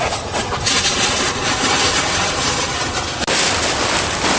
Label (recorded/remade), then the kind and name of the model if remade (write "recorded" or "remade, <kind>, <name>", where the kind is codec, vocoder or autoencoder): recorded